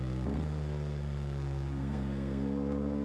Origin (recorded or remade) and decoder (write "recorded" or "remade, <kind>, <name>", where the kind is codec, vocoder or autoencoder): remade, codec, SNAC